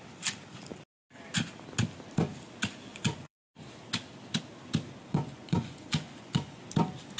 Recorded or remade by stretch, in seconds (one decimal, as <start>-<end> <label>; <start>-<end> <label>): 0.0-2.9 recorded; 2.9-3.6 remade; 3.6-5.0 recorded; 5.0-6.6 remade; 6.6-7.2 recorded